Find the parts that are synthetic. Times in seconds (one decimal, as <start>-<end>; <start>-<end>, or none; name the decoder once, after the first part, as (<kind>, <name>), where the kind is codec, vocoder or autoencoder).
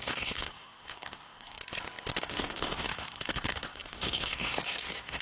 0.0-1.6 (codec, SNAC); 2.2-5.2